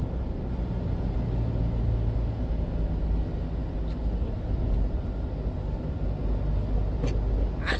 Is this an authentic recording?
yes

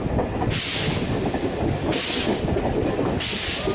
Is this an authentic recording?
yes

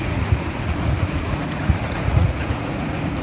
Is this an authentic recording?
no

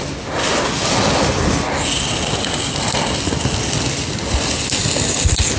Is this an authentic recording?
yes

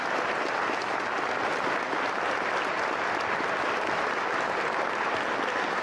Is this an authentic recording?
yes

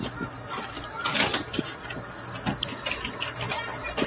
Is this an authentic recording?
yes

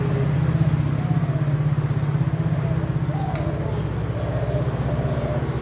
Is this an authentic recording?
yes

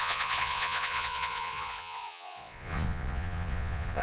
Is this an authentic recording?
no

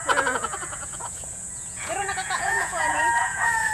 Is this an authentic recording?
no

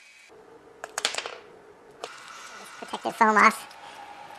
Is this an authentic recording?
no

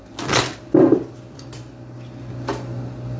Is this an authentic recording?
yes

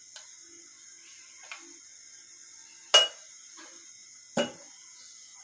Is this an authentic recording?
yes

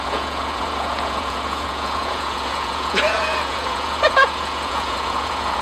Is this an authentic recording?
no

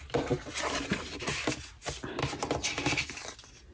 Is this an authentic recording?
yes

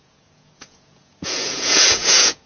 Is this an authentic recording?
no